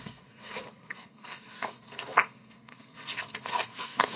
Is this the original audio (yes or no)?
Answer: no